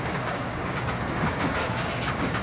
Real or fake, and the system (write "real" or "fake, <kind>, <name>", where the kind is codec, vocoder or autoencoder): fake, codec, DAC